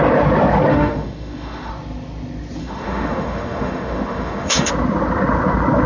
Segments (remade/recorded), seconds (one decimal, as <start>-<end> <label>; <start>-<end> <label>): 0.0-0.7 recorded; 0.7-1.7 remade; 1.7-2.6 recorded; 2.6-4.7 remade; 4.7-5.9 recorded